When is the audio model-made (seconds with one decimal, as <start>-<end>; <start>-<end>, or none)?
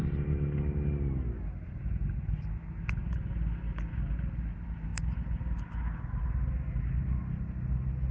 none